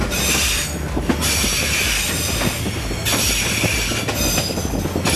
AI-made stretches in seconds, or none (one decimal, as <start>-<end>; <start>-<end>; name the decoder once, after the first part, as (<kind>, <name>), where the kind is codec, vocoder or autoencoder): none